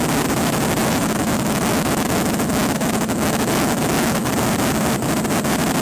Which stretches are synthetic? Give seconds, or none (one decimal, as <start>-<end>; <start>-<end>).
0.8-4.3